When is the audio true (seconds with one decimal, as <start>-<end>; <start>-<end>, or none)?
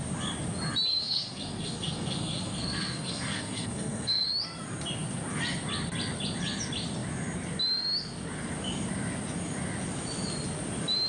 0.0-0.9; 4.3-11.1